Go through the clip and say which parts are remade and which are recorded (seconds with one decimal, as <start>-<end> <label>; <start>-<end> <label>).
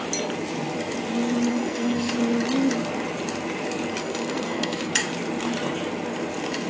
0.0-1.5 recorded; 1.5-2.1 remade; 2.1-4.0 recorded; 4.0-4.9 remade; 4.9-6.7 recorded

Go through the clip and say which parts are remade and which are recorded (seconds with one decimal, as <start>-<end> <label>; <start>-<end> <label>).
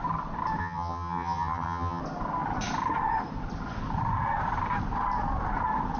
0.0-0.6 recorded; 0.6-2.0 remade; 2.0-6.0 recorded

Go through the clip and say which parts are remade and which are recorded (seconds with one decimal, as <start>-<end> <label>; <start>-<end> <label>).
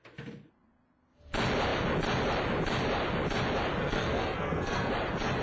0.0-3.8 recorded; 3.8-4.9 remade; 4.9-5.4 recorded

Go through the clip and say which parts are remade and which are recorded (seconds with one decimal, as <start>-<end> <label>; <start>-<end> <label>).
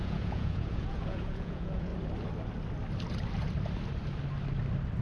0.0-1.9 remade; 1.9-5.0 recorded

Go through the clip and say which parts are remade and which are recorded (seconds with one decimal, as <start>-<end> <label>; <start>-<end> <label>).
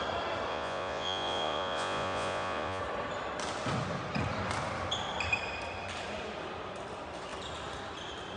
0.0-0.5 recorded; 0.5-2.8 remade; 2.8-8.4 recorded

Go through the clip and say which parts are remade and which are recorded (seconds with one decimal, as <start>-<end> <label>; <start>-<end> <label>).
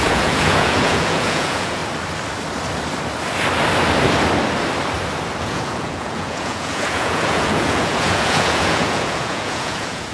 0.0-1.8 remade; 1.8-5.4 recorded; 5.4-10.1 remade